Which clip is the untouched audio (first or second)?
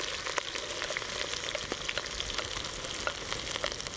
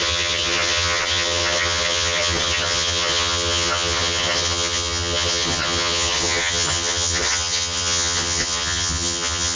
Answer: first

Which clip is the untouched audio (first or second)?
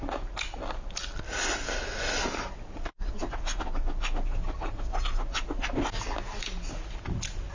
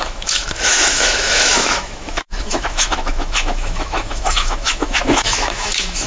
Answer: first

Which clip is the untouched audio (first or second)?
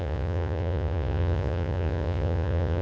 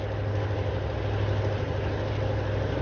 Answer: second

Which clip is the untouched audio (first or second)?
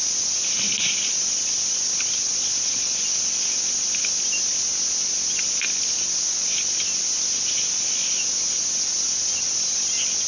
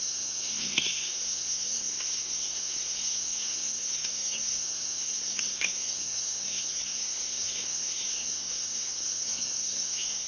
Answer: first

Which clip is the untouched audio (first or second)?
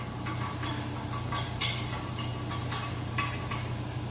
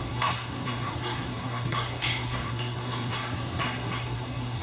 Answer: first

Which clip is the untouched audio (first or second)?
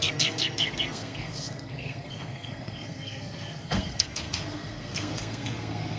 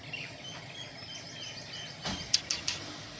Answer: second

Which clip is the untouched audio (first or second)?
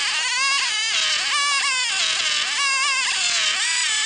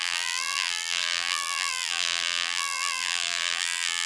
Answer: first